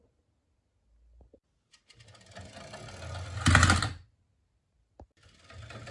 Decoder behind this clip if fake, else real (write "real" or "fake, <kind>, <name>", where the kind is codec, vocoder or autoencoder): real